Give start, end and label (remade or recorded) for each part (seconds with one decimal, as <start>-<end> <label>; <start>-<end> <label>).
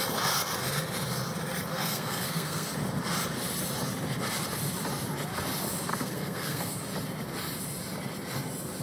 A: 0.0-1.7 recorded; 1.7-2.7 remade; 2.7-5.9 recorded; 5.9-6.8 remade; 6.8-8.8 recorded